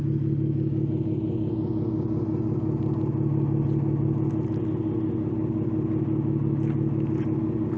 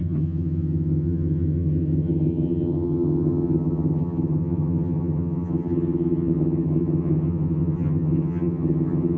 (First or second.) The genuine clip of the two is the first